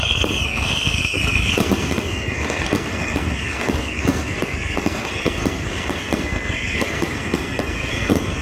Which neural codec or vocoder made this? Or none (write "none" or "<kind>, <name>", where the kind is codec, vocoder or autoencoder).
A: codec, SNAC